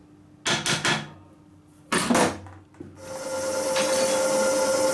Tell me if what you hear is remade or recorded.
recorded